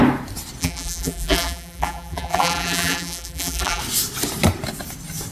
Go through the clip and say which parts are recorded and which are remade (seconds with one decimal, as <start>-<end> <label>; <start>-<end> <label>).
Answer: 0.0-0.6 recorded; 0.6-3.8 remade; 3.8-5.3 recorded